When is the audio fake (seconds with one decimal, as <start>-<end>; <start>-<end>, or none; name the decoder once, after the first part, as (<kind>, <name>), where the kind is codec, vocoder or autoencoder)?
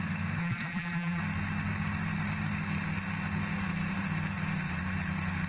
0.4-1.2 (vocoder, BigVGAN v2)